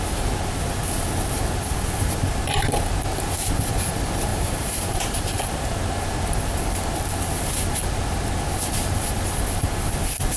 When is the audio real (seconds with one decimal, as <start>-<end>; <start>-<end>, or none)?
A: 0.0-4.3; 5.8-10.4